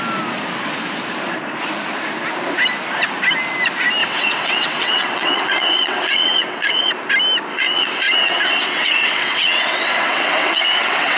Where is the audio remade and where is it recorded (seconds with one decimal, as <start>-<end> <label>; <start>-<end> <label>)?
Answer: 0.0-4.0 recorded; 4.0-6.9 remade; 6.9-7.5 recorded; 7.5-11.2 remade

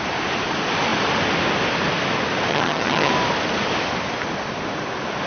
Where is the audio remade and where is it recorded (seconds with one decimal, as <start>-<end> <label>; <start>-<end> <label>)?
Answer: 0.0-2.5 recorded; 2.5-3.1 remade; 3.1-5.3 recorded

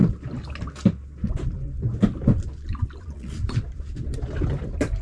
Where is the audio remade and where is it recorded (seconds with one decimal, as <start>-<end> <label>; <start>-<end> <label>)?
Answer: 0.0-3.0 recorded; 3.0-3.4 remade; 3.4-5.0 recorded

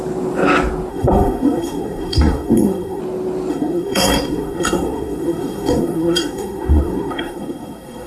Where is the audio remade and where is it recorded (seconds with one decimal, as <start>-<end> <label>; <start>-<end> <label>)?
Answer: 0.0-0.9 recorded; 0.9-3.0 remade; 3.0-3.5 recorded; 3.5-8.1 remade